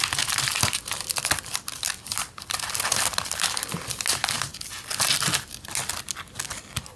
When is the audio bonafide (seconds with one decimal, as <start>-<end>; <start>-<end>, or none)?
0.0-0.5; 3.7-4.5; 5.5-7.0